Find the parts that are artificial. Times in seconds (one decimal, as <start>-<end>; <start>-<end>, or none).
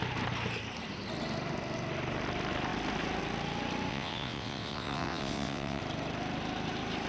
3.9-5.8